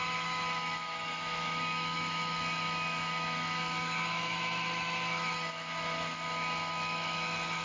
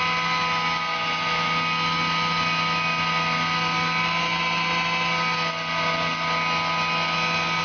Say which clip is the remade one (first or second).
first